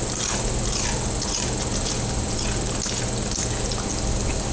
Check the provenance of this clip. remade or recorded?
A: recorded